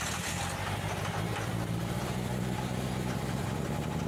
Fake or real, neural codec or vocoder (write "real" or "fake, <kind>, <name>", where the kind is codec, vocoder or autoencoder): real